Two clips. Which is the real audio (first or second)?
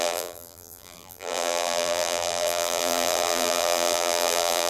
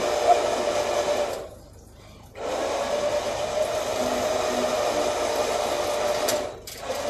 second